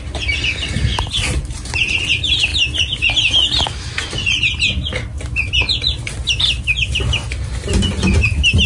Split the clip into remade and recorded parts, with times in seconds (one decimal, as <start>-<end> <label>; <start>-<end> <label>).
0.0-8.7 recorded